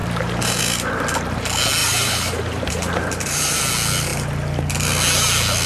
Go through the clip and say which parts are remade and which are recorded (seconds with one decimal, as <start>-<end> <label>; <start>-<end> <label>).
0.0-0.6 remade; 0.6-1.8 recorded; 1.8-3.6 remade; 3.6-5.7 recorded